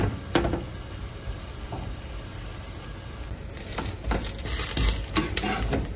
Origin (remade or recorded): recorded